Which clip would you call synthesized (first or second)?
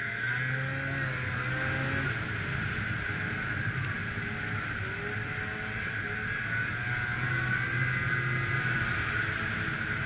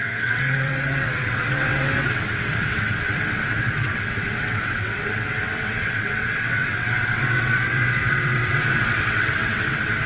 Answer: second